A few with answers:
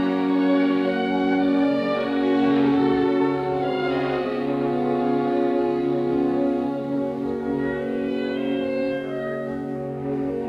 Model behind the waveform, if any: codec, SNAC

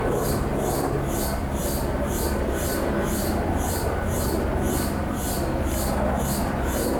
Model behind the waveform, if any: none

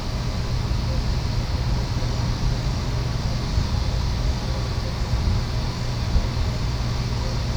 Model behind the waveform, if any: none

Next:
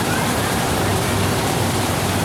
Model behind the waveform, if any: vocoder, BigVGAN v2